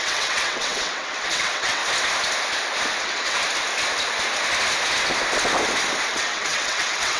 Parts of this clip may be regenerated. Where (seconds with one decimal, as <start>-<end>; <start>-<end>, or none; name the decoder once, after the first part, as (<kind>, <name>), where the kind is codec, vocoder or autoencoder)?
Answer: 0.0-1.8 (vocoder, WaveNeXt); 3.0-3.4; 6.1-7.2